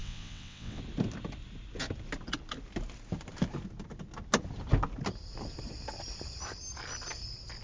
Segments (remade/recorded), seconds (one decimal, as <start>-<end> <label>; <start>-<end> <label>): 0.0-0.8 remade; 0.8-7.6 recorded